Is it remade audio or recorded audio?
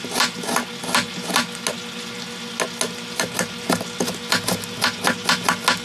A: recorded